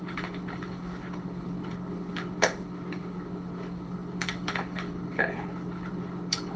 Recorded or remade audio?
remade